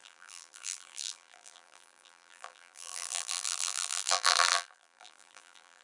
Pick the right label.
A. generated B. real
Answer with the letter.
A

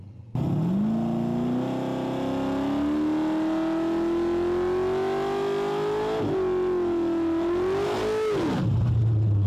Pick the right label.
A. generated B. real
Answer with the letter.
B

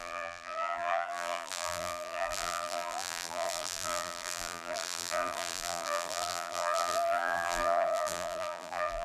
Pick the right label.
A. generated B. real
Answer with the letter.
A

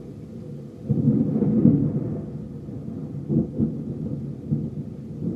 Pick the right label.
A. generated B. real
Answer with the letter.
B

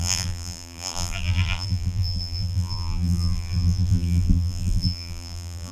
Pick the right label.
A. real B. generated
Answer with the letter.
B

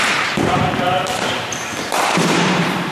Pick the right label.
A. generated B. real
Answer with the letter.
A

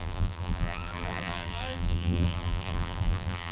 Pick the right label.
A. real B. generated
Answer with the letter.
B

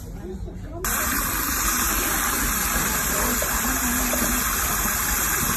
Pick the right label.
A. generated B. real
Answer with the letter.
B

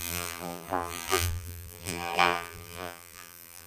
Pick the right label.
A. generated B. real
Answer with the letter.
A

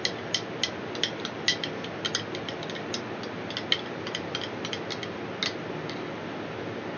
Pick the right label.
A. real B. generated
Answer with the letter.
A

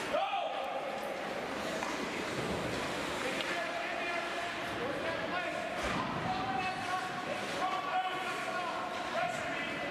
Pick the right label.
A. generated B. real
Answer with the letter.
B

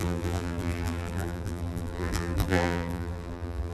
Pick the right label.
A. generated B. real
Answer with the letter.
A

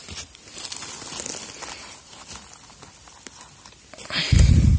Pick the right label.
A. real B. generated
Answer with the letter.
A